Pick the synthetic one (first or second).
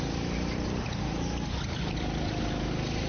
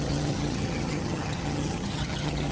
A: second